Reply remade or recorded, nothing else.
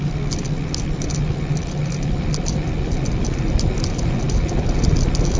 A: recorded